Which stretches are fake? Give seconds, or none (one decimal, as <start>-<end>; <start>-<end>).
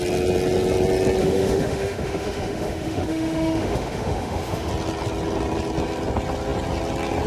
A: 1.2-4.7